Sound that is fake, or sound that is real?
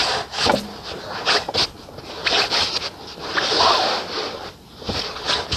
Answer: real